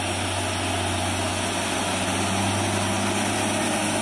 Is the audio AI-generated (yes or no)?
no